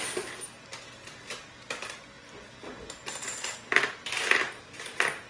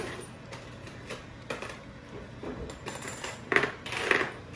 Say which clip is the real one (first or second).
first